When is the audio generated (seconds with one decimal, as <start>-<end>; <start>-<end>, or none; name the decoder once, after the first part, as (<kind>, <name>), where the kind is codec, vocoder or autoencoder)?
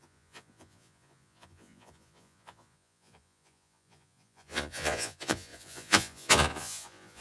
0.0-7.2 (vocoder, Vocos)